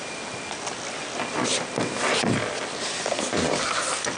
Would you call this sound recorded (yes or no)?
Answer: yes